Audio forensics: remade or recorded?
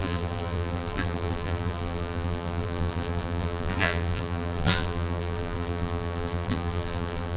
remade